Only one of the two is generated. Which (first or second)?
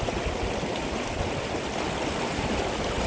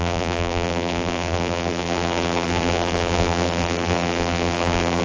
second